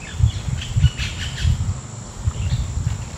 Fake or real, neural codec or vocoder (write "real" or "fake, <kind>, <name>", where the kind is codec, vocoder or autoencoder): real